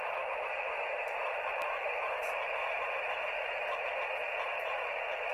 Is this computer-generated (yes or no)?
yes